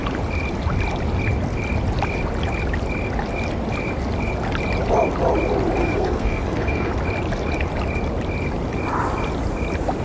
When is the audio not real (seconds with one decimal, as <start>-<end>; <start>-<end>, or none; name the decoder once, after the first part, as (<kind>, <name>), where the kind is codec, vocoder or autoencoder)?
5.8-6.9 (codec, SNAC)